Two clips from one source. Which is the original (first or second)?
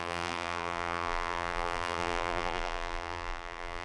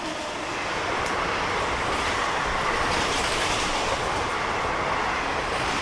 second